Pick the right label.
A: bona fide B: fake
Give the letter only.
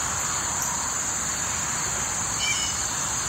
A